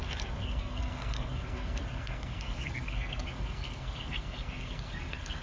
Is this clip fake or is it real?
fake